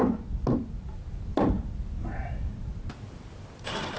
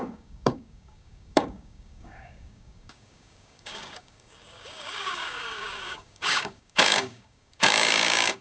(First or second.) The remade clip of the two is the second